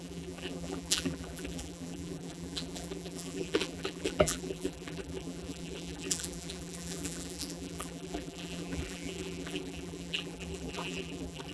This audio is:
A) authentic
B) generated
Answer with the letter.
B